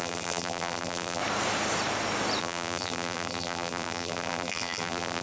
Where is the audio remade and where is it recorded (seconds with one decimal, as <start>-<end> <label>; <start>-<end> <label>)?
0.0-1.2 remade; 1.2-2.4 recorded; 2.4-5.2 remade